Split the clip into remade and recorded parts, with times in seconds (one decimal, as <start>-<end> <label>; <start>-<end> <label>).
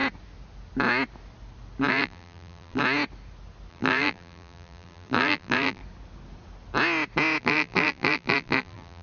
0.0-1.9 recorded; 1.9-2.8 remade; 2.8-3.7 recorded; 3.7-5.8 remade; 5.8-7.4 recorded; 7.4-9.0 remade